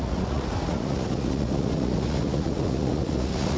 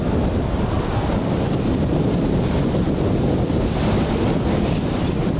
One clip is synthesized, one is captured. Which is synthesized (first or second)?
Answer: first